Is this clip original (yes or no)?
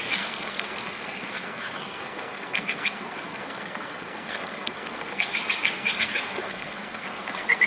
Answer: no